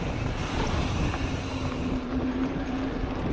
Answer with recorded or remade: recorded